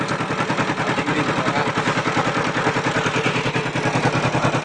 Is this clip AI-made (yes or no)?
no